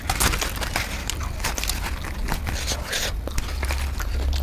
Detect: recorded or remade recorded